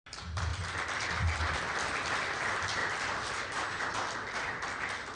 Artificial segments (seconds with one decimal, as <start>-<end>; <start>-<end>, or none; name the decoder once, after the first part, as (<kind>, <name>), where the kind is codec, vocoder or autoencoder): none